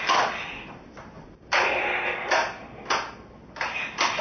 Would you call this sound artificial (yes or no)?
no